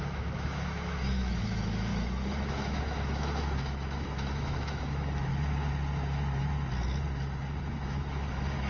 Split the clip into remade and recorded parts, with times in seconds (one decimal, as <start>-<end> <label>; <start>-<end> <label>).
0.0-5.3 remade; 5.3-7.6 recorded; 7.6-8.7 remade

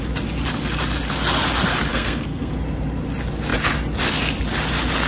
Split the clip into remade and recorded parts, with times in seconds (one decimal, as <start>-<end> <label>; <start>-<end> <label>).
0.0-1.9 recorded; 1.9-2.5 remade; 2.5-5.1 recorded